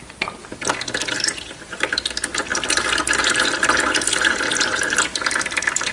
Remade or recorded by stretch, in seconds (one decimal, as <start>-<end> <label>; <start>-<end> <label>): 0.0-0.4 remade; 0.4-1.0 recorded; 1.0-5.9 remade